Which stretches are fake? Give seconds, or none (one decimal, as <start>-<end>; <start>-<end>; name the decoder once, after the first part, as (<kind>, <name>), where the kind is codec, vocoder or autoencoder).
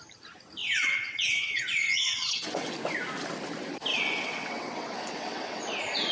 0.6-2.7 (vocoder, WaveNeXt); 3.9-5.6